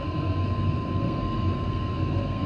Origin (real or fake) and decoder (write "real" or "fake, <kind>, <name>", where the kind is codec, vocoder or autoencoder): fake, codec, SNAC